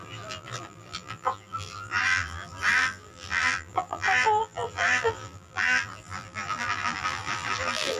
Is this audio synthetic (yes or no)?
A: yes